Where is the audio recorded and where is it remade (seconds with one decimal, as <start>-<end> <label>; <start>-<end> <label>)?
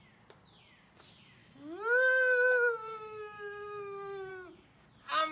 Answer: 0.0-1.4 recorded; 1.4-4.3 remade; 4.3-5.3 recorded